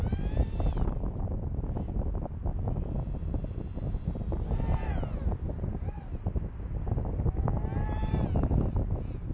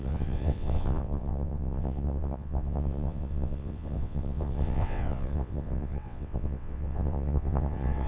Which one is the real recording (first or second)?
first